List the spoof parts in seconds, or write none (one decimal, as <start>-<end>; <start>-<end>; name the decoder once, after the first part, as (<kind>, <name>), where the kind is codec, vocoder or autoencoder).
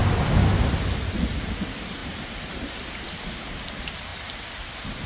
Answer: 2.0-2.7 (vocoder, BigVGAN v2)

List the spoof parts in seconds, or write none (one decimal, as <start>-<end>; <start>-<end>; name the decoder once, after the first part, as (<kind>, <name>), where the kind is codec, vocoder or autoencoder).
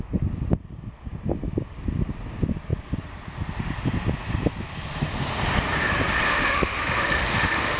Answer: 6.3-7.8 (autoencoder, DAC-VAE)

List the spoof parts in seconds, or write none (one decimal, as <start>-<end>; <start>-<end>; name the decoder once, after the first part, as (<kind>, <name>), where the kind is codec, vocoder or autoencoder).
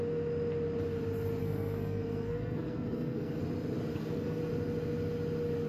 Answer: 1.4-3.4 (codec, SNAC); 3.9-4.4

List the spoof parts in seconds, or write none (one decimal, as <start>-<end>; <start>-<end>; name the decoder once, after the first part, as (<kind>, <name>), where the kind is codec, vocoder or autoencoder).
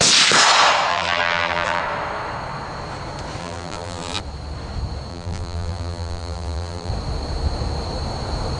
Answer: 0.9-1.8 (vocoder, BigVGAN v2); 3.4-4.2; 5.1-6.9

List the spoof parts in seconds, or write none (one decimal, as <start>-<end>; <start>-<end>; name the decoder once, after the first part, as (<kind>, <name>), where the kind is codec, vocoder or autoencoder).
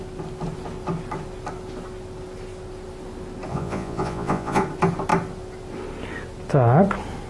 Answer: 3.5-4.6 (vocoder, Vocos)